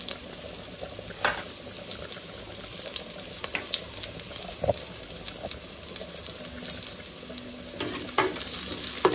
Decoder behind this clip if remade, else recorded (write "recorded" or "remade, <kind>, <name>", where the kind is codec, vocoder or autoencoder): recorded